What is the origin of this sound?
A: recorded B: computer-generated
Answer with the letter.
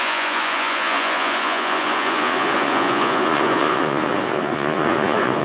B